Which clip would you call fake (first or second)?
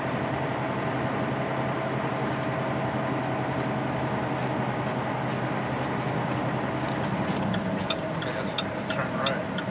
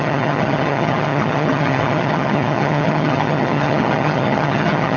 second